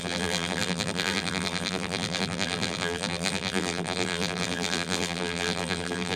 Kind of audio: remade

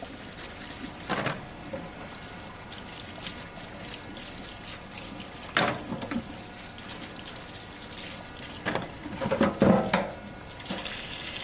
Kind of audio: recorded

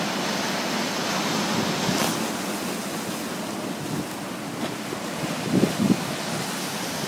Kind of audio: recorded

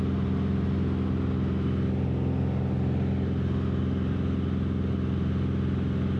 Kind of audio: recorded